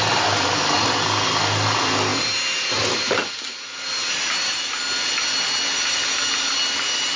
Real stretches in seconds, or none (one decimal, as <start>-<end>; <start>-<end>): 0.0-7.2